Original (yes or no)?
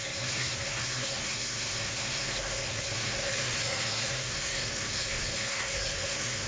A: no